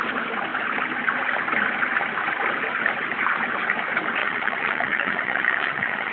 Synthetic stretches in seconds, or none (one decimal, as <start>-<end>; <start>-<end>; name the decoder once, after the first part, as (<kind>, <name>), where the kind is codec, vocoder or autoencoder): 4.2-6.1 (vocoder, Vocos)

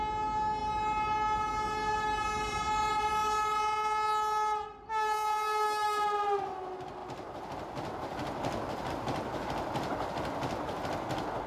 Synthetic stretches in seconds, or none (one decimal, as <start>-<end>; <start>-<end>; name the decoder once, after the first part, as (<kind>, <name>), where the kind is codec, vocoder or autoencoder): none